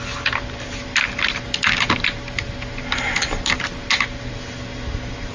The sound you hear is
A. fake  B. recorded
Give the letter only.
B